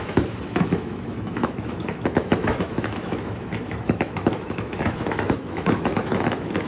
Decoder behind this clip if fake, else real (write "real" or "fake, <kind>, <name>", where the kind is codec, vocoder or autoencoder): fake, autoencoder, DAC-VAE